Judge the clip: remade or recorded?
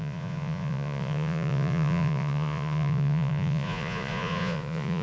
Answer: remade